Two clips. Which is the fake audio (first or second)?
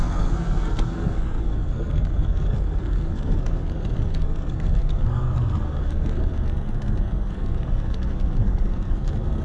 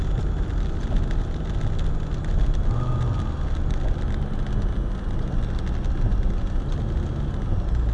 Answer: first